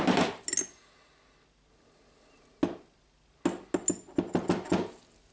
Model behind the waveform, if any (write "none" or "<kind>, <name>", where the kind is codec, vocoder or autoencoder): none